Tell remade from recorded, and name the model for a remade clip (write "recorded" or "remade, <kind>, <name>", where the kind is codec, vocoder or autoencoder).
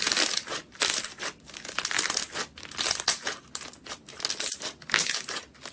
recorded